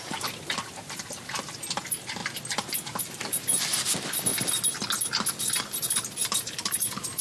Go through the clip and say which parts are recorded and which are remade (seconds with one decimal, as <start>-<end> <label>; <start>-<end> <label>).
0.0-2.2 remade; 2.2-3.0 recorded; 3.0-4.3 remade; 4.3-5.6 recorded; 5.6-7.2 remade